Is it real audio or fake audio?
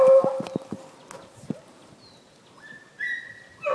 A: real